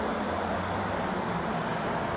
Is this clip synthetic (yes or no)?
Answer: no